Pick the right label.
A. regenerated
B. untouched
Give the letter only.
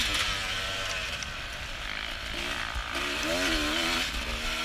B